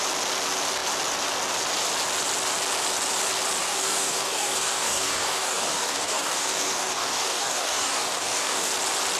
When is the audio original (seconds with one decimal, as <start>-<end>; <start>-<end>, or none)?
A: 0.0-3.6; 8.7-9.2

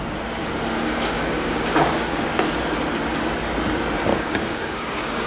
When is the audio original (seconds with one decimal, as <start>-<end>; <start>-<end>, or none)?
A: 0.0-0.7; 2.2-4.1

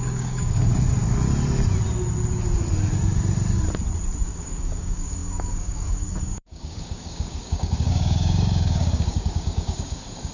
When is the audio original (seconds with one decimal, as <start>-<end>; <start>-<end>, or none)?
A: 0.7-4.2

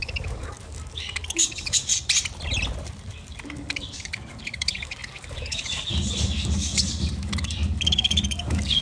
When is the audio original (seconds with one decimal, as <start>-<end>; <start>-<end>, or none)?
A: 1.9-3.1

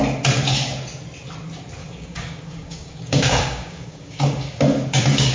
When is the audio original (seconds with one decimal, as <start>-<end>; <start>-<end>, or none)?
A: 0.0-1.8